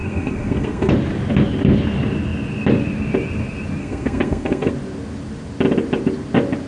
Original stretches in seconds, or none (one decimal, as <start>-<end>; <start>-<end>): 0.9-3.8; 4.7-6.7